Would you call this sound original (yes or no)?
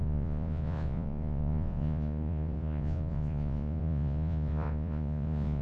no